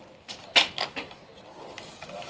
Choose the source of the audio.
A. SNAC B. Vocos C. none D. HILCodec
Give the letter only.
C